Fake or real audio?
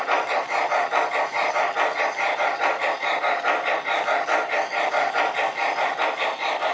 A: real